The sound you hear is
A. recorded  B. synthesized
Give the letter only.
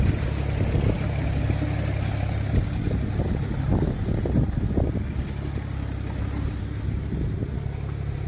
A